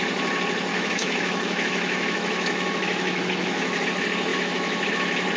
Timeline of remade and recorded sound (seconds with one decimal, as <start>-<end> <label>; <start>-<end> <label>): 0.0-0.7 recorded; 0.7-3.9 remade; 3.9-4.3 recorded; 4.3-4.9 remade; 4.9-5.4 recorded